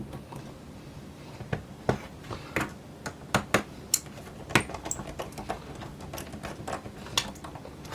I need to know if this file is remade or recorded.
recorded